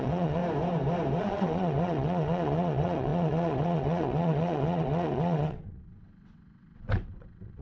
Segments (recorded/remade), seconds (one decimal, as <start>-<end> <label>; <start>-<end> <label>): 0.0-0.4 remade; 0.4-1.2 recorded; 1.2-7.6 remade